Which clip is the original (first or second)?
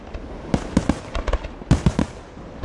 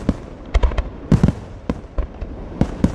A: first